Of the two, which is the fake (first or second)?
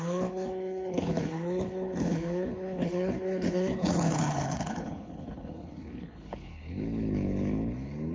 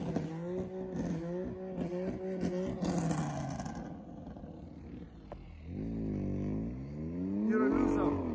first